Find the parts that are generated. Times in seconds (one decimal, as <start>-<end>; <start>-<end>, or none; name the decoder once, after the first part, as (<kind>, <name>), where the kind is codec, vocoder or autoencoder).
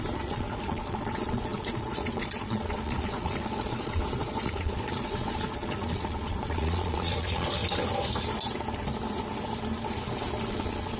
0.0-7.6 (vocoder, Vocos); 10.5-11.0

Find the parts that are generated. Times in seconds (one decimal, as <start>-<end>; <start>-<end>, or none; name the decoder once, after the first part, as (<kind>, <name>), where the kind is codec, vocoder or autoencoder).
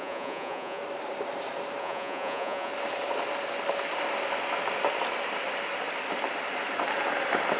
0.0-0.8 (vocoder, Vocos); 1.8-2.7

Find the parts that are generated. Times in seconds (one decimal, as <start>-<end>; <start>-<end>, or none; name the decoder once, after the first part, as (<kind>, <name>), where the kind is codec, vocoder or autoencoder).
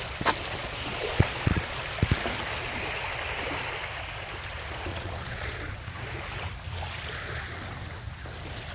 0.6-1.8 (vocoder, Vocos); 4.9-6.1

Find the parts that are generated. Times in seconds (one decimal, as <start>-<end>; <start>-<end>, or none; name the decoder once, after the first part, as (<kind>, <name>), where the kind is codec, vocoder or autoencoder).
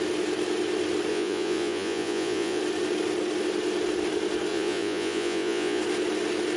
1.1-2.6 (vocoder, Vocos); 4.5-5.8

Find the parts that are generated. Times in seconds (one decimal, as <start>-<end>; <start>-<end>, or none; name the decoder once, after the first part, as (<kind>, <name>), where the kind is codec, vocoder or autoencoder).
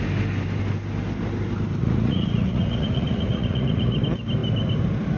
1.8-4.0 (vocoder, Vocos)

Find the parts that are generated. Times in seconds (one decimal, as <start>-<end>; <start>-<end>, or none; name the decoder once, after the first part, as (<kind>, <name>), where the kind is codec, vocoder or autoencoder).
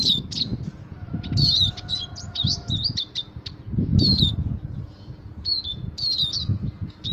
0.0-7.1 (vocoder, Vocos)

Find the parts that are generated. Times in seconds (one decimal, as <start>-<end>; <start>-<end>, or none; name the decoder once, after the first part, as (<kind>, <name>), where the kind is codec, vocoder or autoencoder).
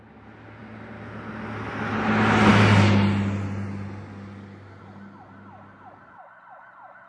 none